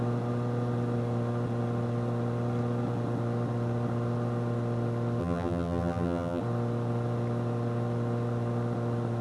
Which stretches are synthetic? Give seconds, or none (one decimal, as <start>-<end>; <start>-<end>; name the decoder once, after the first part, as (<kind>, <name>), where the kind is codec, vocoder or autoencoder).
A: 5.2-6.4 (vocoder, BigVGAN v2)